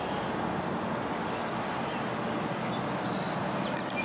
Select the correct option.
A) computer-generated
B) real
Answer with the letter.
B